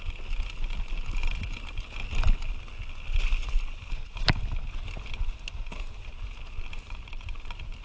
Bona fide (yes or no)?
yes